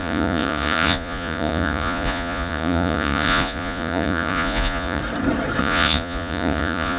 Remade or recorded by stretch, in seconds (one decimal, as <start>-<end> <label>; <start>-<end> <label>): 0.0-5.0 remade; 5.0-5.6 recorded; 5.6-7.0 remade